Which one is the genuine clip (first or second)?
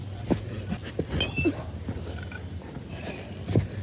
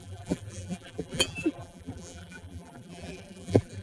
first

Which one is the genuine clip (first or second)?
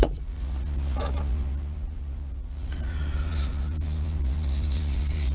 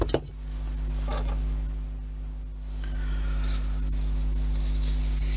second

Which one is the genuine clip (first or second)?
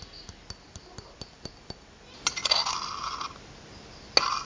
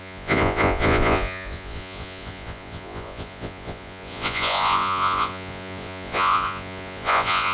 first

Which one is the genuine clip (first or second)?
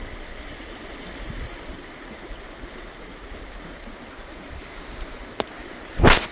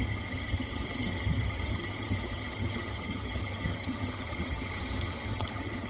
first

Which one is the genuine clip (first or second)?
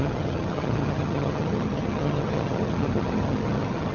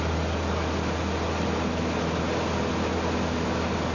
second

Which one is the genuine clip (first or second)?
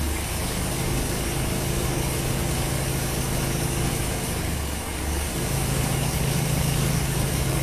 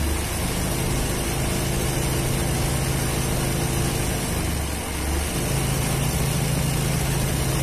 second